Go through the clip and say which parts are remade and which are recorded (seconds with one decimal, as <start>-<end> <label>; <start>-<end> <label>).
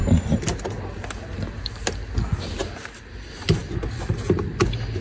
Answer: 0.0-5.0 recorded